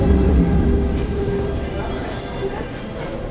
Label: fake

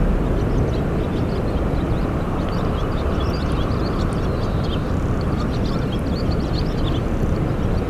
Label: real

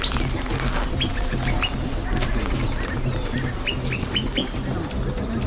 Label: real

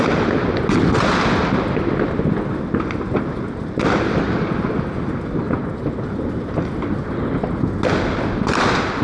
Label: real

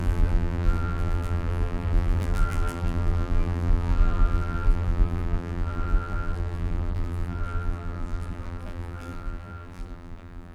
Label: fake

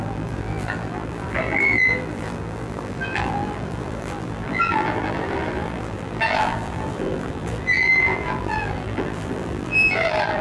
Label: fake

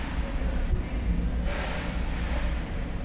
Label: real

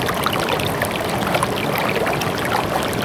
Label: fake